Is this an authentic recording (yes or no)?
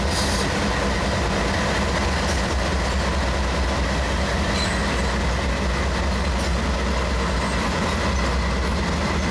yes